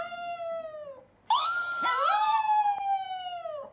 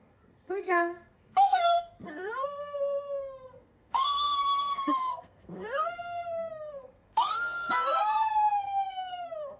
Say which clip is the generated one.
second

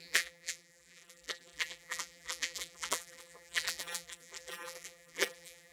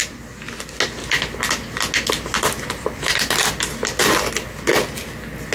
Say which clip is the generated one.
first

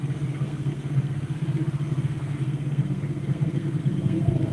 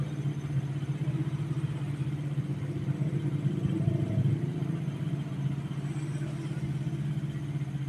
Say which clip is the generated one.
first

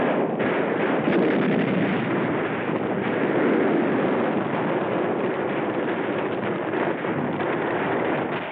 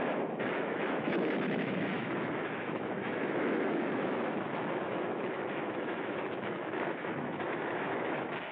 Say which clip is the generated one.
second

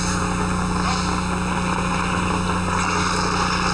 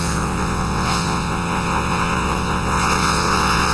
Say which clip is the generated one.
second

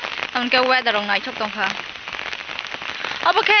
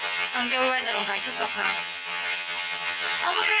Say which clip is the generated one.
second